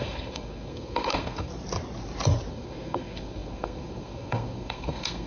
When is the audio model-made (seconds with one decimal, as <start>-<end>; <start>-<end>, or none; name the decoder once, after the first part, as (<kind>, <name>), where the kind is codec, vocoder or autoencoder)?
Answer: 0.0-1.5 (codec, SNAC); 2.5-5.3